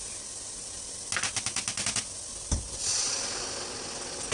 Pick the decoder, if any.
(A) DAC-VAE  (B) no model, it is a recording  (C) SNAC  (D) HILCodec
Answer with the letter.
B